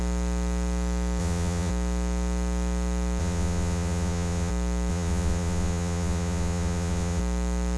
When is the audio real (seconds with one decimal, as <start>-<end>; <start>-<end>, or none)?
0.0-1.2; 1.7-3.2; 4.5-4.9; 7.2-7.8